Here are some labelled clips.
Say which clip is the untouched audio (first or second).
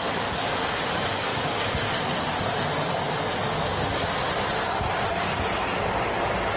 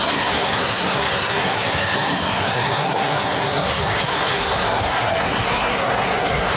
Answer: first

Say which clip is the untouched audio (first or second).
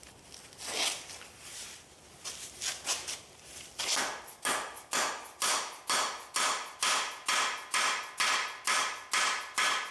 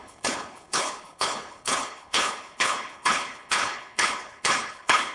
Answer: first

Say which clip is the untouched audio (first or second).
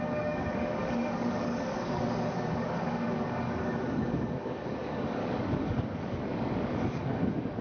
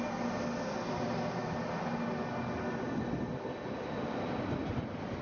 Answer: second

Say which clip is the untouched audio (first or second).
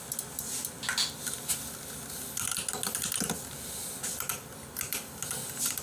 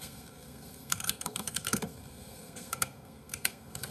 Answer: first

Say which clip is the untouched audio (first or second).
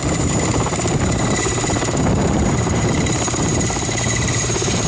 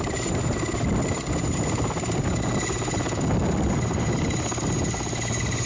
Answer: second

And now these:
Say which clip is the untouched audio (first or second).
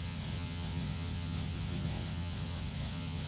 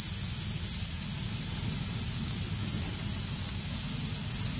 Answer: second